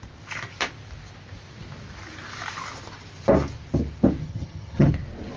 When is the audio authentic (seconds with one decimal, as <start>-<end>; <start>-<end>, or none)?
0.0-4.2; 4.9-5.4